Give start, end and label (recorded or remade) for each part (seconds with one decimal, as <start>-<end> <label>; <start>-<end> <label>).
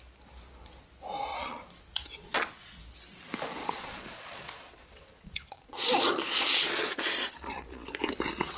0.0-1.3 recorded; 1.3-2.8 remade; 2.8-3.6 recorded; 3.6-7.9 remade; 7.9-8.6 recorded